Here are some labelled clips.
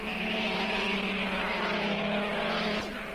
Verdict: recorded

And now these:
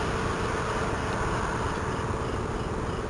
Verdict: recorded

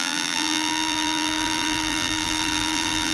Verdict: remade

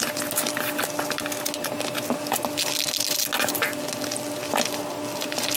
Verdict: recorded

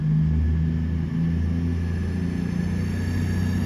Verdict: recorded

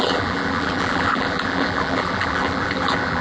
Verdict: remade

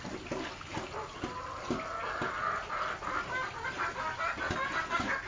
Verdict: recorded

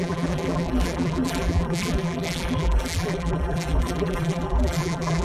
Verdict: remade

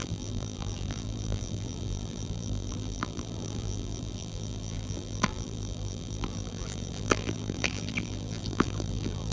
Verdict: remade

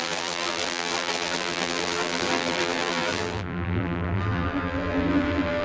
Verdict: remade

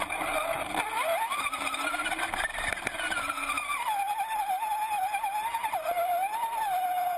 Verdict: recorded